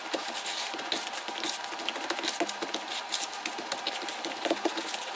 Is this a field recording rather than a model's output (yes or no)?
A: yes